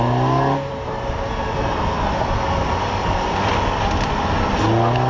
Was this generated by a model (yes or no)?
no